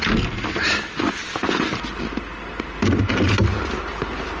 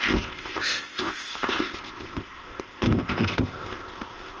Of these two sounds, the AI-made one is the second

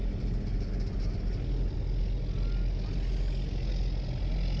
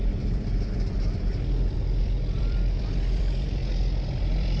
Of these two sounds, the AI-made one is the second